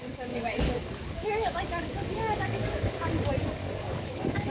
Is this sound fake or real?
fake